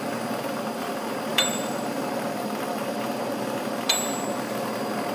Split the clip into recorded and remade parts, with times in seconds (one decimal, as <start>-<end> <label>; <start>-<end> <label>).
0.0-1.3 recorded; 1.3-3.9 remade; 3.9-5.1 recorded